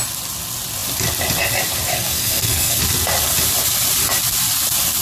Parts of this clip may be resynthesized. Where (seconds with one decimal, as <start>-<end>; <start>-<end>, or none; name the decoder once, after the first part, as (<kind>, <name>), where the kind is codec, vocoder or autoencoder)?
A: 1.9-2.8 (codec, SNAC)